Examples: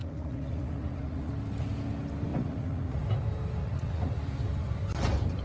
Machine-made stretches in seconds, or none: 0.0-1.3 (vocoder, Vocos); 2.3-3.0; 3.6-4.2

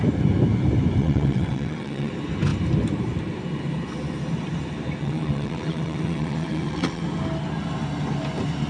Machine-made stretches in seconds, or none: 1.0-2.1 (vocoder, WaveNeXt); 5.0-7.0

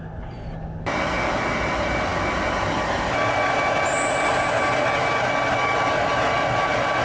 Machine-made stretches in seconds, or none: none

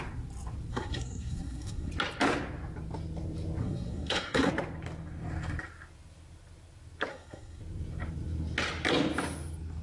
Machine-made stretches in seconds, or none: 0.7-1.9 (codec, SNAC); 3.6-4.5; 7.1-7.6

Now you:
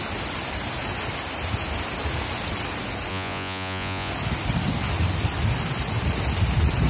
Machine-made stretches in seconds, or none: 3.1-4.1 (vocoder, Vocos)

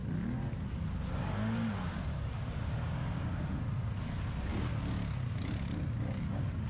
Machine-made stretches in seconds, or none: none

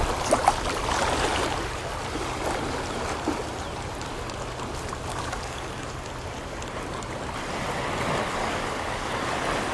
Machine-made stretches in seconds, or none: 5.1-5.9 (codec, DAC); 8.4-9.1

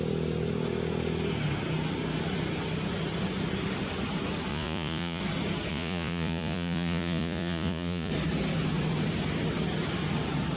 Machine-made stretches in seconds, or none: 4.5-5.2 (vocoder, Vocos); 5.7-8.1